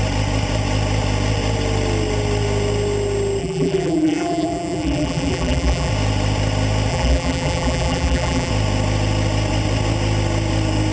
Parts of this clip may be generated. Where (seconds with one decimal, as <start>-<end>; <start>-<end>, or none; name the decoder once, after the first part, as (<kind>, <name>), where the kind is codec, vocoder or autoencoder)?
3.4-5.9 (vocoder, BigVGAN v2); 6.9-8.5